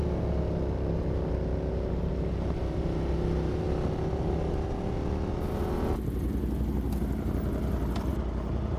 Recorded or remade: recorded